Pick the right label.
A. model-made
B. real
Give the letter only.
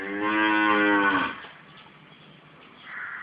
B